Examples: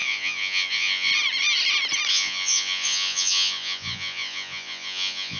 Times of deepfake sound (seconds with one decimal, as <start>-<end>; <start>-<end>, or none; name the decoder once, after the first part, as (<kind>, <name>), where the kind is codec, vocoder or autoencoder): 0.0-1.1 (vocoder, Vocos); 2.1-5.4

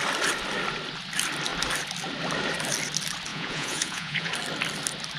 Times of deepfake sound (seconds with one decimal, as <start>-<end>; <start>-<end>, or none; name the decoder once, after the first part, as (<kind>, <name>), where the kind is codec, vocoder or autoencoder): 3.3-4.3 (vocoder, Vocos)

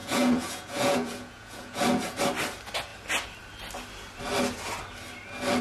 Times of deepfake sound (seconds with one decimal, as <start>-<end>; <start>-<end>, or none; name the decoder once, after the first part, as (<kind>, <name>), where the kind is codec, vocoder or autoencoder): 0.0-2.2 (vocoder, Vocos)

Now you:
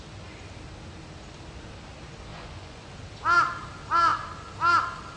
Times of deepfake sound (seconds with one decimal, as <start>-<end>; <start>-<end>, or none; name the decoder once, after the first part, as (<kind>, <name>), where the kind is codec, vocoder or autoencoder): 2.3-2.9 (vocoder, Vocos)

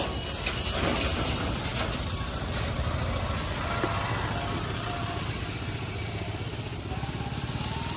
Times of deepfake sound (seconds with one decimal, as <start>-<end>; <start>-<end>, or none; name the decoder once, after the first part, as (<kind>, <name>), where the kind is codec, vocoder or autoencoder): none

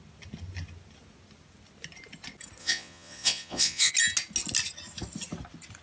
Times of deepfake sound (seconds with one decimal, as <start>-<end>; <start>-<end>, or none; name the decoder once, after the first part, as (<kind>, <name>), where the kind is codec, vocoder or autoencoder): 2.6-3.9 (vocoder, Vocos)